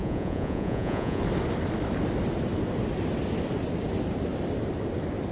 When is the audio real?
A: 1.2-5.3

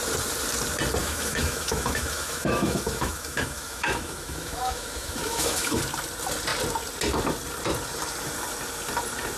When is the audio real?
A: 0.0-1.0; 5.8-9.4

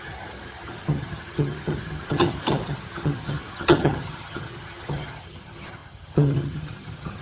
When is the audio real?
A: none